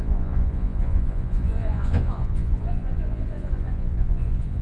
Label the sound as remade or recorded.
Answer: remade